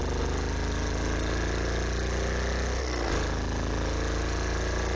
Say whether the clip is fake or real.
real